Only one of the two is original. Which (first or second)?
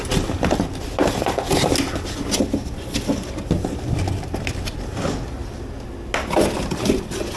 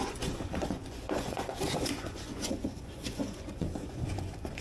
first